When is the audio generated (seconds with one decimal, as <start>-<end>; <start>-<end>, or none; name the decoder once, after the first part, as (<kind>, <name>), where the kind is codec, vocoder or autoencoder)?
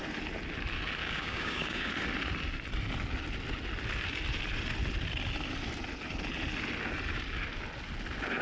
1.0-1.9 (codec, DAC)